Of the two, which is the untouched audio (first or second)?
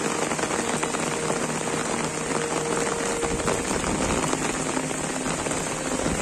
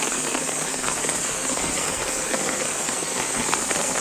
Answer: first